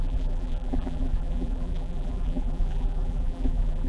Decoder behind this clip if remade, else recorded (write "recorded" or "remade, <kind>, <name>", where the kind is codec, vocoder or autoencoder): remade, vocoder, BigVGAN v2